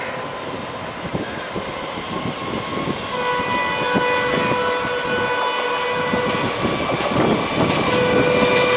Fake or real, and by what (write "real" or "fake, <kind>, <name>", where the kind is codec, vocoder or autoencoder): real